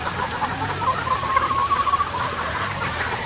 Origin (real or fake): fake